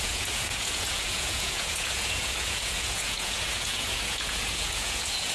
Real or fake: fake